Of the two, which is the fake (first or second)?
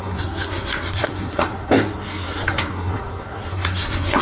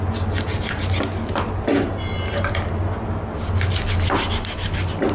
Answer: first